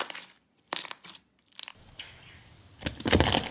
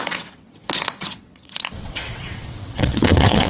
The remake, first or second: second